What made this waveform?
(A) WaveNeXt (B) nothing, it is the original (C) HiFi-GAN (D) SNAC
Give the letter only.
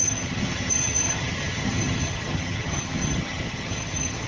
C